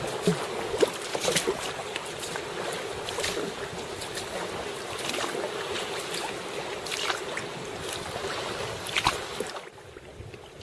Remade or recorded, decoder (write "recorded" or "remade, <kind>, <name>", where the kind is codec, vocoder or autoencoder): recorded